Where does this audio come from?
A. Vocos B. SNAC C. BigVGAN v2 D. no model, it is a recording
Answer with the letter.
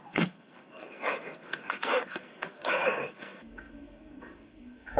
B